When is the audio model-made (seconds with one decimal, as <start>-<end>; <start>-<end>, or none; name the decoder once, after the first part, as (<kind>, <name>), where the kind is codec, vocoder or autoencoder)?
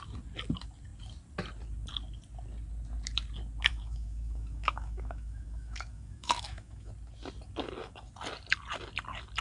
3.7-6.9 (autoencoder, DAC-VAE)